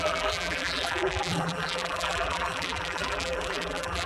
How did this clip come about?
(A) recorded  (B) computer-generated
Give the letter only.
B